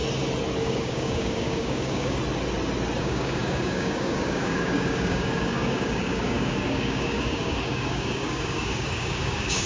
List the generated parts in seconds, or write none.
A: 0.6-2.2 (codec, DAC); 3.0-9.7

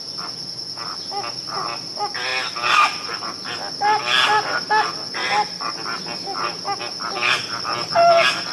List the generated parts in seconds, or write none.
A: none

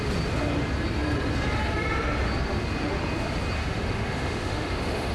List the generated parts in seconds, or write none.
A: 3.6-5.1 (autoencoder, DAC-VAE)

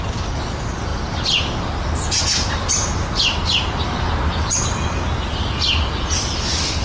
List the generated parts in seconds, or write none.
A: none

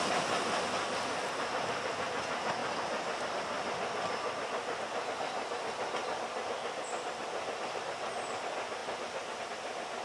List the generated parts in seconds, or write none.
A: 2.6-4.8 (vocoder, BigVGAN v2)

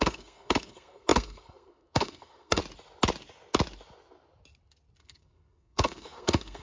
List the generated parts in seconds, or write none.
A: 0.0-2.6 (codec, SNAC); 5.0-6.6

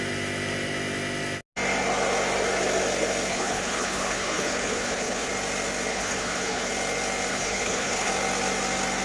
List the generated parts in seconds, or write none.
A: 3.3-5.3 (codec, HILCodec); 5.9-6.7; 7.3-8.1

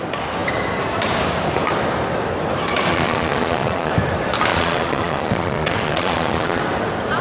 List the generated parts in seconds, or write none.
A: 2.9-3.9 (vocoder, Vocos); 4.5-6.6